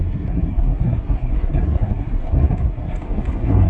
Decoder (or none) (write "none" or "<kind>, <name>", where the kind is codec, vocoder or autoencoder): codec, SNAC